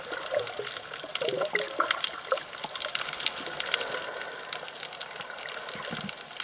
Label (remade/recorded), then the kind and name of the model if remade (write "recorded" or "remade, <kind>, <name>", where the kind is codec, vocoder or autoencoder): recorded